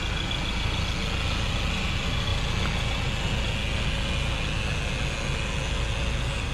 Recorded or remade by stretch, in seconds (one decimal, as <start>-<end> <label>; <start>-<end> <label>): 0.0-6.5 recorded